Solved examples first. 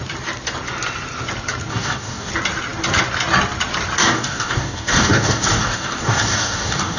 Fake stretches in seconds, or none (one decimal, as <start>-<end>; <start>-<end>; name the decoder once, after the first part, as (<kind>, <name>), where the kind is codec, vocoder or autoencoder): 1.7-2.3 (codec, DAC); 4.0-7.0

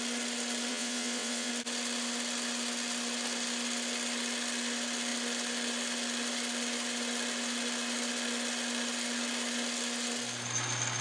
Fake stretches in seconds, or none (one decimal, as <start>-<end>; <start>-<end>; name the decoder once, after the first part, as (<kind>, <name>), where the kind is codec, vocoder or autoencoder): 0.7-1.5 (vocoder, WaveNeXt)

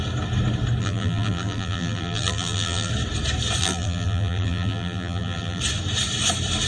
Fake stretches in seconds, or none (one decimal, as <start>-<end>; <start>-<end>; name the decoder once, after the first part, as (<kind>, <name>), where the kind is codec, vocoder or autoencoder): 0.8-2.9 (vocoder, BigVGAN v2); 3.6-5.6